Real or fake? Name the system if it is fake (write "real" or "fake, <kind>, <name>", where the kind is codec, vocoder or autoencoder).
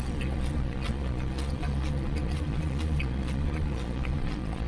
fake, vocoder, Vocos